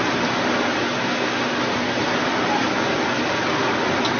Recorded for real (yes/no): yes